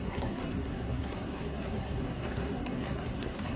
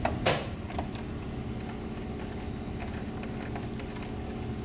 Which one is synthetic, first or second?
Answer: first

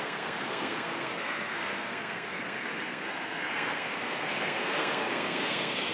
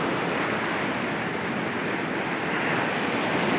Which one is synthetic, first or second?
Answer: first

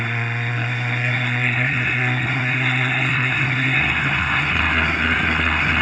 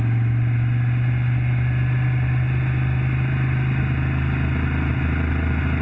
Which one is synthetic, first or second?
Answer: first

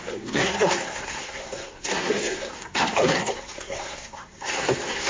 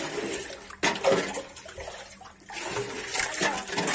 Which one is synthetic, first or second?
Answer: first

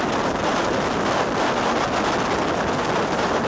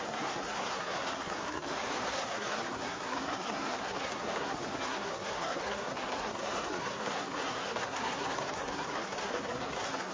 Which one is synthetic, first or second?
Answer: second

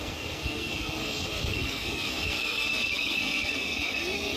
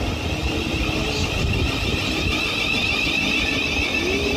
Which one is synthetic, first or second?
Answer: first